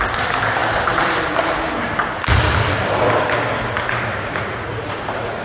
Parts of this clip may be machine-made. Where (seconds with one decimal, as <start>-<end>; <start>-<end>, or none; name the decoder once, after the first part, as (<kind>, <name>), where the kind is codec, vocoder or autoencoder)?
4.1-5.4 (vocoder, Vocos)